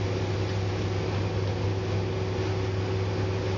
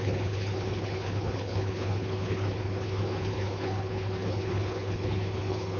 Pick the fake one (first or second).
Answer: second